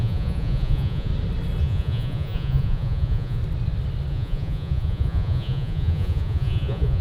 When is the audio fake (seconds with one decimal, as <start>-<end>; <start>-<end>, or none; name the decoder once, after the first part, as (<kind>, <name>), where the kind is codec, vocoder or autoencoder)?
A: 0.0-1.1 (vocoder, Vocos); 1.6-3.4; 4.1-7.0